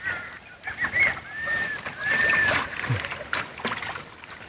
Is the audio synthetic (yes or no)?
no